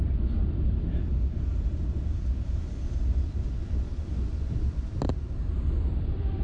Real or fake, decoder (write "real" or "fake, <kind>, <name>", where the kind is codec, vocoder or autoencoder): fake, vocoder, BigVGAN v2